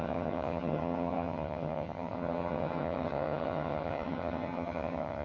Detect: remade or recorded remade